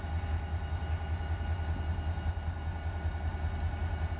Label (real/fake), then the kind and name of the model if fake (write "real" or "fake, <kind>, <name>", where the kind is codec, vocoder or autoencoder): real